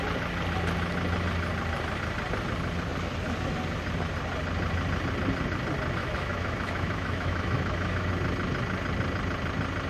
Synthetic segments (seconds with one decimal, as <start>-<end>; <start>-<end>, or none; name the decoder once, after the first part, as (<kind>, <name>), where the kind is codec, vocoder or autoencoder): 6.0-8.1 (autoencoder, DAC-VAE)